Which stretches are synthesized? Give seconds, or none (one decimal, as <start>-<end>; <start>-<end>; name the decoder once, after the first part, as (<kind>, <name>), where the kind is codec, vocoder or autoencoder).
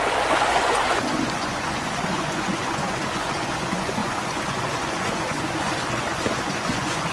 0.0-7.1 (vocoder, Vocos)